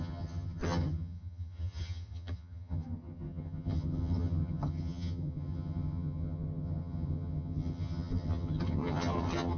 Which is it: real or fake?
fake